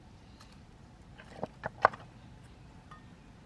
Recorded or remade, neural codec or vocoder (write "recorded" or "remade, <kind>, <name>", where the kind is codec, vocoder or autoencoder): recorded